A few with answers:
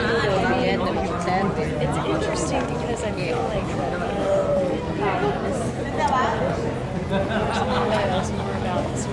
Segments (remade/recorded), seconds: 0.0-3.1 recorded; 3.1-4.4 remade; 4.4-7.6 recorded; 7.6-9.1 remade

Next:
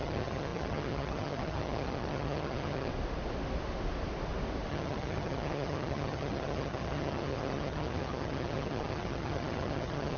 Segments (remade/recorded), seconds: 0.0-2.9 remade; 2.9-4.7 recorded; 4.7-10.2 remade

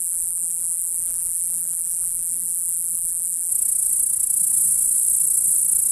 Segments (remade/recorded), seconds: 0.0-3.5 remade; 3.5-5.9 recorded

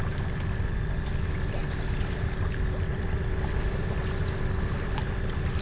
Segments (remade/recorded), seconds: 0.0-5.6 recorded

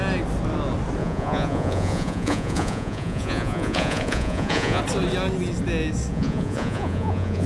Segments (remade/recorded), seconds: 0.0-1.0 recorded; 1.0-4.8 remade; 4.8-6.1 recorded; 6.1-7.5 remade

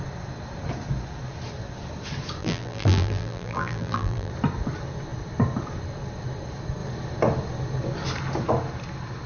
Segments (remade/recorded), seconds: 0.0-2.4 recorded; 2.4-4.3 remade; 4.3-9.3 recorded

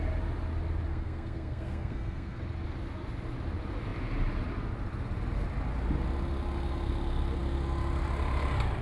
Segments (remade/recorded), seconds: 0.0-0.9 recorded; 0.9-2.4 remade; 2.4-8.8 recorded

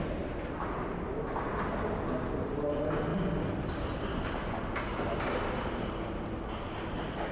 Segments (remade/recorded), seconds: 0.0-7.3 recorded